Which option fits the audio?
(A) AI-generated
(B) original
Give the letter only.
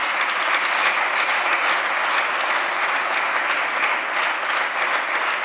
B